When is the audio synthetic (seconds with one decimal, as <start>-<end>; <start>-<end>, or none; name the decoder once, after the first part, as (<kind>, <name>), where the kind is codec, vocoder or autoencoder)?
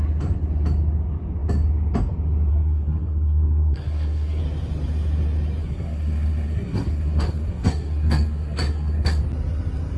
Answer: 2.5-4.4 (codec, SNAC); 5.6-9.2